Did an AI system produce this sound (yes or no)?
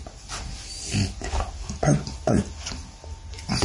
no